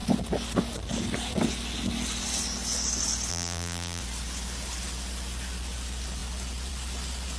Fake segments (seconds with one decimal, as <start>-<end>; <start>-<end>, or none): 3.3-4.0